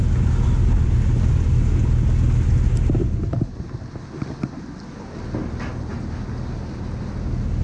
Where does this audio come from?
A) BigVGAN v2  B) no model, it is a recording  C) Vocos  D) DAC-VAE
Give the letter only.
B